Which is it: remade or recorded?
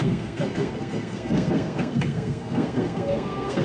remade